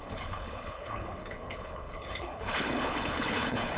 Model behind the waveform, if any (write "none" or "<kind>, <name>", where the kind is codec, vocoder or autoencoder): codec, HILCodec